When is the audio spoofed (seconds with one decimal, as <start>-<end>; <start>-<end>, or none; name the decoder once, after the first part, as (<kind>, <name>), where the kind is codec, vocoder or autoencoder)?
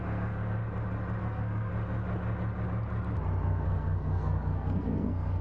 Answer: 0.0-0.6 (codec, SNAC); 1.2-1.7; 3.4-5.4